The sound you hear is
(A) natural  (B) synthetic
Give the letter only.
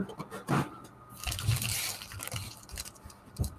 B